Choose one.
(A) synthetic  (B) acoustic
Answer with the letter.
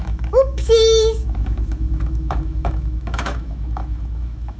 A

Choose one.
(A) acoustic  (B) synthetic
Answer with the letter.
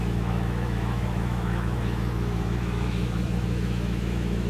B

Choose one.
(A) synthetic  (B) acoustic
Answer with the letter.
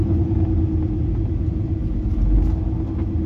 B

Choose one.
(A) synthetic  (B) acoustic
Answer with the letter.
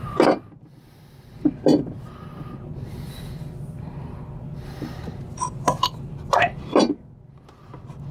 B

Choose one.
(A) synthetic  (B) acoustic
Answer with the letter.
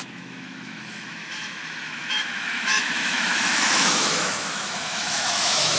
A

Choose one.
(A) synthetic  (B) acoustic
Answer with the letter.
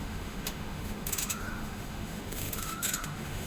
A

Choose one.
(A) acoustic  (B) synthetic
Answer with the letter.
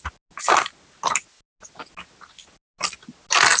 A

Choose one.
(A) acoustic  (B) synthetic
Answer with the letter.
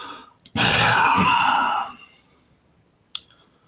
A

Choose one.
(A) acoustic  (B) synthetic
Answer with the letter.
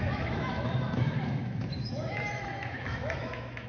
B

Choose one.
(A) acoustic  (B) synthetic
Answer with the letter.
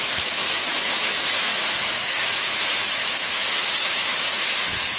B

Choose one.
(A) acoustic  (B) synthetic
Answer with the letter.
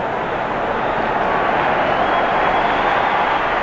A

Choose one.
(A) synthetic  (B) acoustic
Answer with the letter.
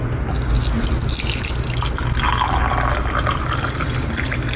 B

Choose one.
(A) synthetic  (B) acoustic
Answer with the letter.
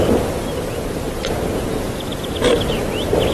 B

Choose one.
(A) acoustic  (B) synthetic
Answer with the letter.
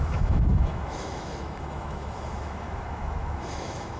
B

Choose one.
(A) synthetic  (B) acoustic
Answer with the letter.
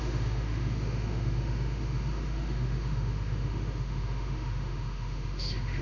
A